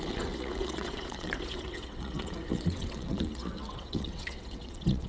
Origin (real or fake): fake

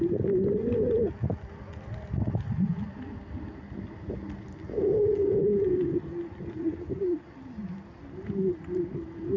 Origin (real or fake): real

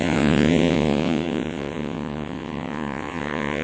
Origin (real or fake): fake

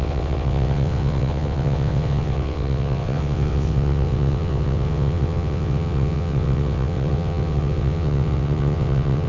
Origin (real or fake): fake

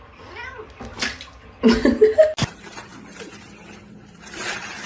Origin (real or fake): real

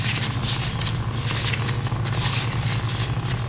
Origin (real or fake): real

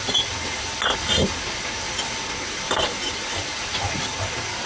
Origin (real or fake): real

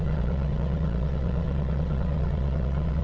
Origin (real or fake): fake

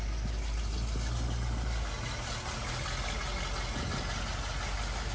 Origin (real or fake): real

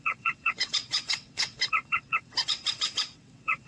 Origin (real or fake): fake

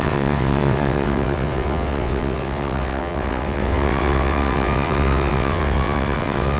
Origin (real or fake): fake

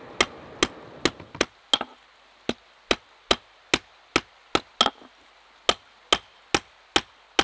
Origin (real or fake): real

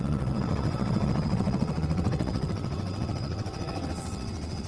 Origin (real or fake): fake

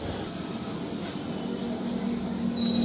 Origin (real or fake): real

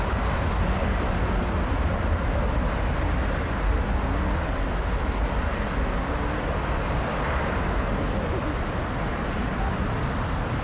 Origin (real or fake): real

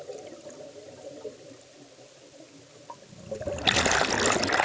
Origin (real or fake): real